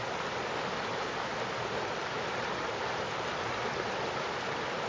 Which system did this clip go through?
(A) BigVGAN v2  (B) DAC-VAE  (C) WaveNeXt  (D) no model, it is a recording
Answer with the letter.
D